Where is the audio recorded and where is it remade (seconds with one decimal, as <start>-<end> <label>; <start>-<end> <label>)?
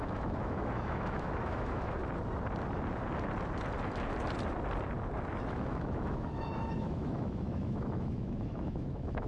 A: 0.0-2.0 remade; 2.0-5.5 recorded; 5.5-9.3 remade